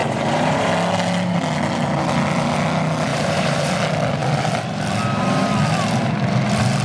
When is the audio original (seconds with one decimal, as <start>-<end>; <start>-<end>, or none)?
0.7-3.1; 3.7-6.8